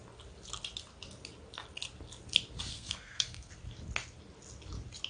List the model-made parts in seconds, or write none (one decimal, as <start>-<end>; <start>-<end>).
2.7-3.5